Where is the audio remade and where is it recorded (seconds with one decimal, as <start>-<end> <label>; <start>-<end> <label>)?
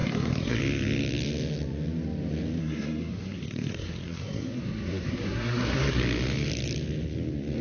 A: 0.0-0.6 remade; 0.6-2.6 recorded; 2.6-6.0 remade; 6.0-7.6 recorded